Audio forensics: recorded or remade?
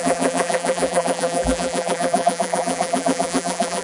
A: remade